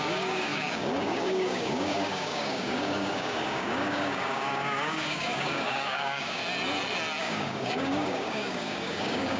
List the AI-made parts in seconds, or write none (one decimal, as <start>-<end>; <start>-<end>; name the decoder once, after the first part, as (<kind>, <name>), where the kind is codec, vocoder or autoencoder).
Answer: 0.0-6.4 (codec, DAC); 7.2-9.4